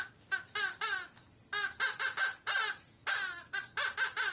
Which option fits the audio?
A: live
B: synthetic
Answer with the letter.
A